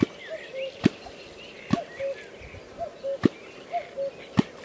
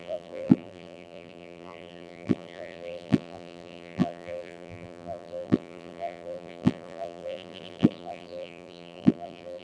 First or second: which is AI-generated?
second